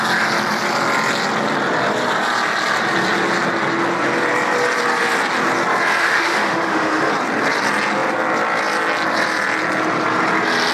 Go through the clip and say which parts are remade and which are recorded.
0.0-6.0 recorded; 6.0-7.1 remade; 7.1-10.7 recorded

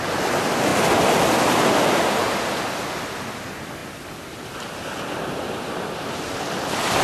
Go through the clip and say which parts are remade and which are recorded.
0.0-7.0 recorded